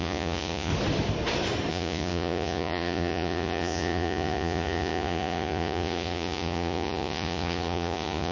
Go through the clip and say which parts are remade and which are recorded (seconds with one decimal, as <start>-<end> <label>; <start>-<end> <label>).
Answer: 0.0-0.7 remade; 0.7-1.7 recorded; 1.7-8.3 remade